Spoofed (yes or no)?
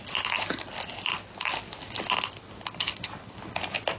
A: no